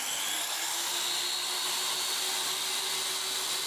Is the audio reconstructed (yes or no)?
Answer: no